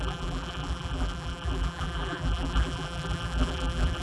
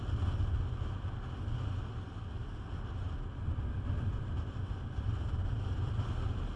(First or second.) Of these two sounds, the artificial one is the first